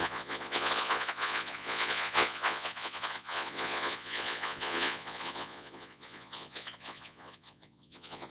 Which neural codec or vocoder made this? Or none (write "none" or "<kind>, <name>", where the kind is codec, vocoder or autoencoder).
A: vocoder, Vocos